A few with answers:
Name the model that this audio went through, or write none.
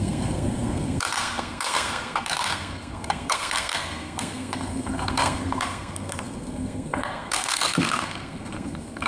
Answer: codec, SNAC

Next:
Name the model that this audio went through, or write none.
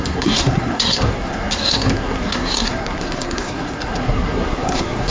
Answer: codec, SNAC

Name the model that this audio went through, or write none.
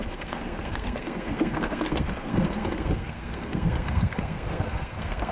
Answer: codec, SNAC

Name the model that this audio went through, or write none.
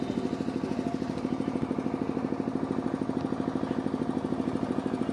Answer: none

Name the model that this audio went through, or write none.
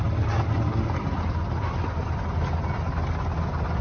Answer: none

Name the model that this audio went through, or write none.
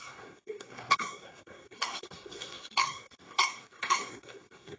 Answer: codec, SNAC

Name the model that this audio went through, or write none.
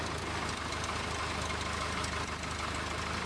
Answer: none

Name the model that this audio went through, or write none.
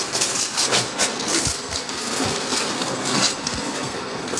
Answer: codec, SNAC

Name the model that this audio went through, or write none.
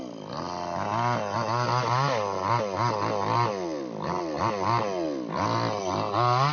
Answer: none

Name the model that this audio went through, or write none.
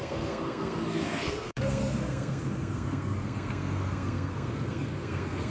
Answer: codec, SNAC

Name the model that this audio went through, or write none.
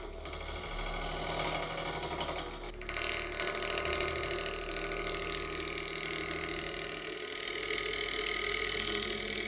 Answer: none